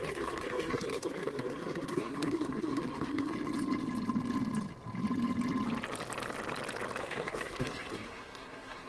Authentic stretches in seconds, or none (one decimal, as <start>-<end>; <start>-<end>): 3.3-7.0

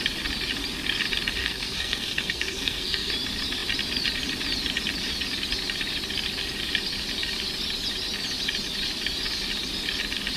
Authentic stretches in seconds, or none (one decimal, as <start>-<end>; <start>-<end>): 0.0-1.4; 3.1-10.4